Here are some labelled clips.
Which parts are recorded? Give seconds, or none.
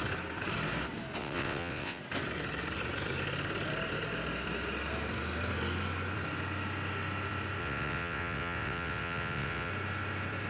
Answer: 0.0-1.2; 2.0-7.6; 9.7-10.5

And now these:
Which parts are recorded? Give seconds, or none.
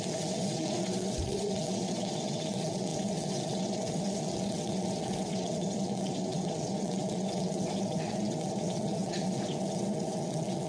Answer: none